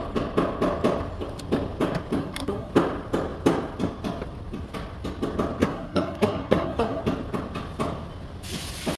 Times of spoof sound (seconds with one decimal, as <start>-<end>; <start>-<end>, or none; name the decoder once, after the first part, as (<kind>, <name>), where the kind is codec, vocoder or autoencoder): 2.2-2.7 (codec, SNAC); 5.6-7.0